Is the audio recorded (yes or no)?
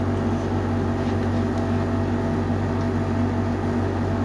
yes